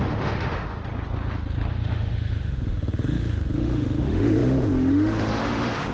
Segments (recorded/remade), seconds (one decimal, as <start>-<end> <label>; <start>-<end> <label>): 0.0-0.9 remade; 0.9-1.7 recorded; 1.7-5.9 remade